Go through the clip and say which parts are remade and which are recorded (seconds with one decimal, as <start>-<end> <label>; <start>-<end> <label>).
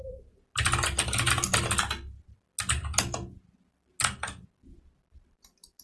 0.0-5.8 recorded